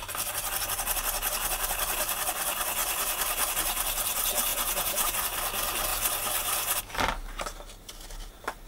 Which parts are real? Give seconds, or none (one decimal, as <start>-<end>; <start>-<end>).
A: 0.0-4.5; 5.1-8.7